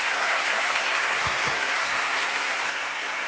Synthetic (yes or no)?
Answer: yes